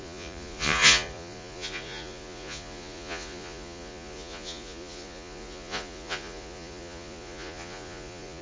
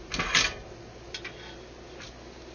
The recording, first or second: second